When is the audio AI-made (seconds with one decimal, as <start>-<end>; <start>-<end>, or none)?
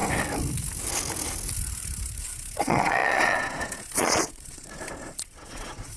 2.2-6.0